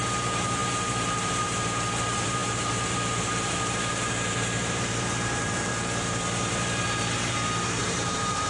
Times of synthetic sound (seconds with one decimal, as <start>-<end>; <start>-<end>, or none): 0.0-5.7; 7.8-8.5